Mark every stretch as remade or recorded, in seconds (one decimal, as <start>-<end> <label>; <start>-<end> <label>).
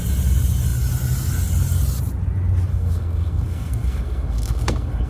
0.0-2.7 recorded; 2.7-5.1 remade